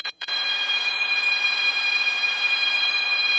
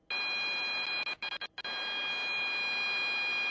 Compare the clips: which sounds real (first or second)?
second